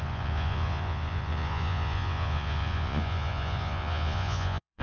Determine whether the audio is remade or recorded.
remade